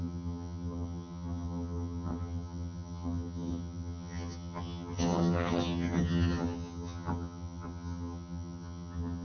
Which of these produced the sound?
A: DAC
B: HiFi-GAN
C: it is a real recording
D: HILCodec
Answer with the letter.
B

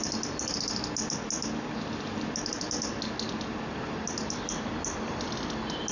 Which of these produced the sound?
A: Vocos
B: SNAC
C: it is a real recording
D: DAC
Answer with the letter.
C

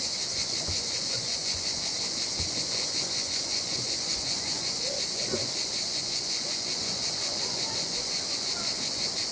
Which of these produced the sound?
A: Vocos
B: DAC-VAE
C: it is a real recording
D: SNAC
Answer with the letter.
A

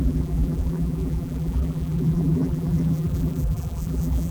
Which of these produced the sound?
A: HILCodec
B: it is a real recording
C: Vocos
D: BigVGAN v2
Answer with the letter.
D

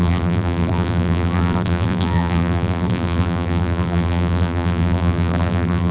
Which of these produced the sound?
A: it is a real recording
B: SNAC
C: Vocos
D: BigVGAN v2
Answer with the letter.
D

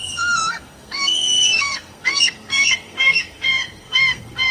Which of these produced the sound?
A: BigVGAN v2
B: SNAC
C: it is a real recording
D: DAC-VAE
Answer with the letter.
B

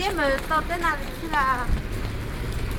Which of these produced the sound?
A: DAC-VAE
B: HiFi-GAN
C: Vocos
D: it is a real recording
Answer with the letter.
D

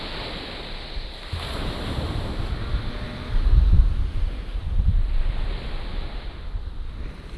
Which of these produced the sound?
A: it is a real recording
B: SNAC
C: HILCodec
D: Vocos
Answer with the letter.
A